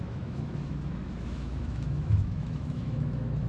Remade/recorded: remade